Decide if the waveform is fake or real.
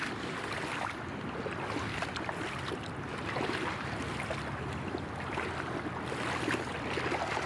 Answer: real